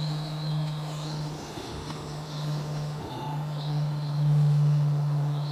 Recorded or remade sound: remade